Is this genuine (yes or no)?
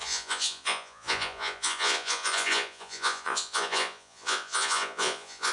no